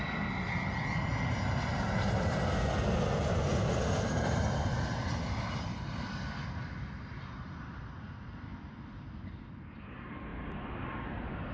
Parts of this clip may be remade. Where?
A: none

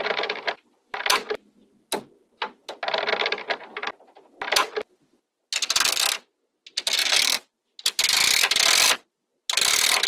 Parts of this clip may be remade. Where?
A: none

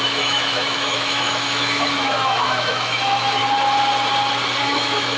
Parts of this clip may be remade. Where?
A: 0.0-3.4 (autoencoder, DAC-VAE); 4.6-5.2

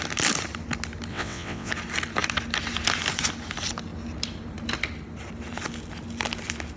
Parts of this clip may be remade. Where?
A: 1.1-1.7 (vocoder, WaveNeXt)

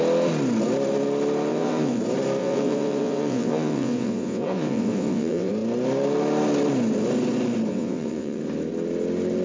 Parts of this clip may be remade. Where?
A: 1.5-2.0 (vocoder, WaveNeXt); 2.4-5.5; 7.7-8.4

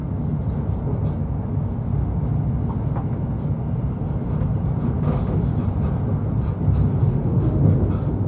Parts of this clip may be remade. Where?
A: 7.1-7.6 (autoencoder, DAC-VAE)